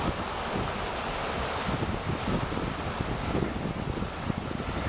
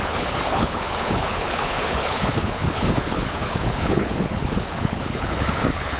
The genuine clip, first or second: first